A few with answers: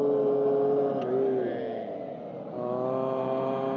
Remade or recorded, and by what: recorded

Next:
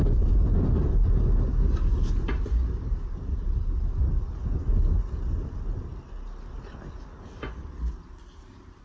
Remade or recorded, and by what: recorded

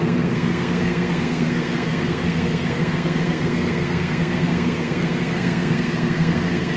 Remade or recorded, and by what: remade, codec, SNAC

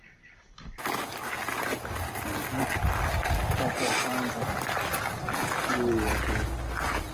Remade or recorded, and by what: recorded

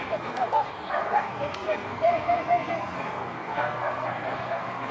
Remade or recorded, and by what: remade, codec, SNAC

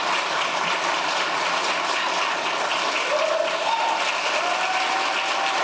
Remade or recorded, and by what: recorded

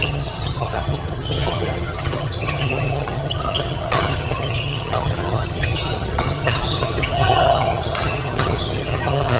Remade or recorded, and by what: remade, vocoder, HiFi-GAN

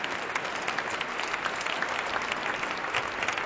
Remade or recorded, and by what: recorded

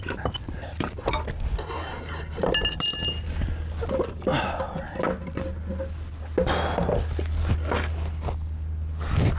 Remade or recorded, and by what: recorded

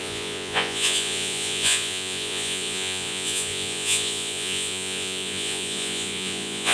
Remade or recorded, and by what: remade, vocoder, Vocos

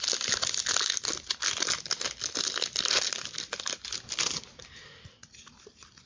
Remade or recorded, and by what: recorded